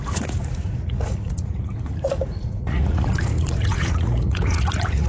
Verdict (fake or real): fake